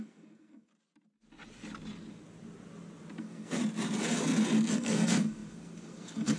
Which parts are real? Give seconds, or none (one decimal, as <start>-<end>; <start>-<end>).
0.7-3.2; 3.6-4.7